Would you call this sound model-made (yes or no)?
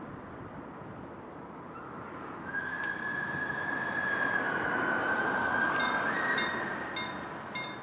no